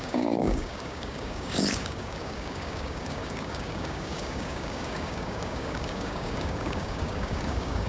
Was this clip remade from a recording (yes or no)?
yes